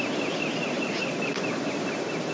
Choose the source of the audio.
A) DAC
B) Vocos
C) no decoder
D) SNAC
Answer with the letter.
C